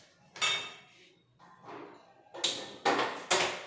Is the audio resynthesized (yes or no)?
no